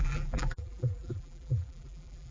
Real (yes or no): no